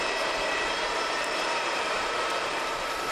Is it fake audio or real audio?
fake